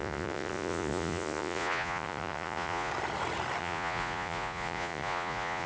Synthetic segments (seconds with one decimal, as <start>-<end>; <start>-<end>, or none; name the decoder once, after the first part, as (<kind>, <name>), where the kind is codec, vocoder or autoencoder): 0.0-2.9 (vocoder, Vocos); 3.6-5.7